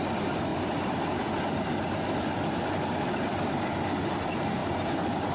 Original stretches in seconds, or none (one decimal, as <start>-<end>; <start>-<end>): 0.0-5.3